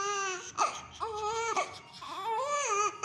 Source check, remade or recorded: recorded